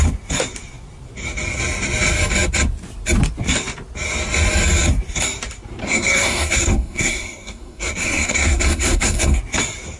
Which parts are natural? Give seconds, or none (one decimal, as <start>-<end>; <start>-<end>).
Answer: 0.0-5.8; 9.4-10.0